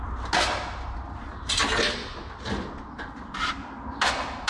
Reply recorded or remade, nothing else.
recorded